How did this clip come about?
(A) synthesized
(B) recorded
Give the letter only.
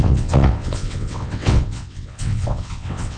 A